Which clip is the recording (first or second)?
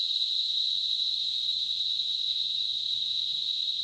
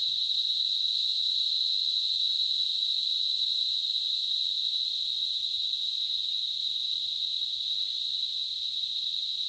second